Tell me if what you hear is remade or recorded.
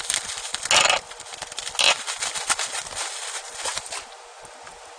recorded